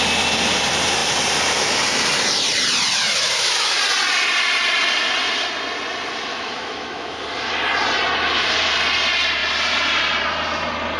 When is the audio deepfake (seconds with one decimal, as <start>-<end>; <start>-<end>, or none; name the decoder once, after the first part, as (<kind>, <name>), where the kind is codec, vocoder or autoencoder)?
3.0-3.8 (autoencoder, DAC-VAE); 6.3-7.2